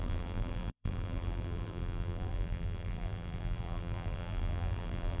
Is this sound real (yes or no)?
no